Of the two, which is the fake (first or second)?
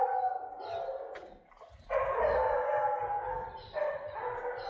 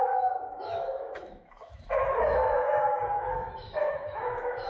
second